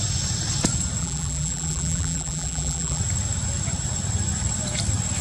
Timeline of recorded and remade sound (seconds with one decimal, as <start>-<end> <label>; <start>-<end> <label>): 0.0-1.0 recorded; 1.0-3.0 remade; 3.0-5.2 recorded